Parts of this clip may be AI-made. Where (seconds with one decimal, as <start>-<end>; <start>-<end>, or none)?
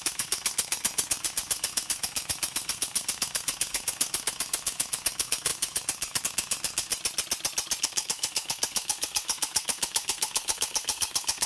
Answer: 0.0-6.9; 7.8-11.5